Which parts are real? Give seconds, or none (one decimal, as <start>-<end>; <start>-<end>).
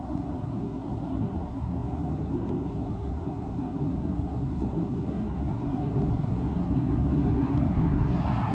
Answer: none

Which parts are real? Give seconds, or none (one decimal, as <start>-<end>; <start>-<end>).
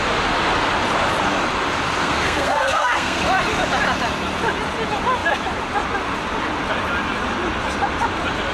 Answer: 0.0-2.0; 3.2-8.5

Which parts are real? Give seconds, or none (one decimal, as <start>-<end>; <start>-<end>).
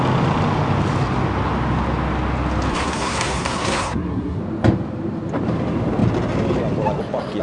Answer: 0.0-2.7; 4.4-7.4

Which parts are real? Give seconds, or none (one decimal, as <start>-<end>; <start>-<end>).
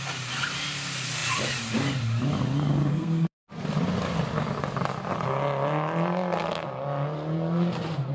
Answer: 0.0-2.9; 3.5-8.1